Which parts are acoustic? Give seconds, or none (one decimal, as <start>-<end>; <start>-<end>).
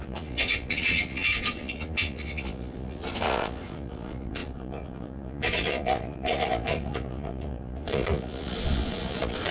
none